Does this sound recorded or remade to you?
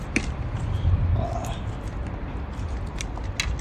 recorded